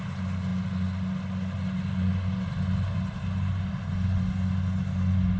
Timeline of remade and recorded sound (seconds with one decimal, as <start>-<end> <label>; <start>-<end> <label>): 0.0-5.4 recorded